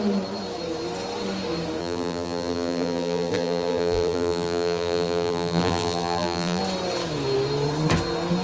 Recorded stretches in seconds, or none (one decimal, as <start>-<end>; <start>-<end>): 0.0-1.8; 6.6-8.4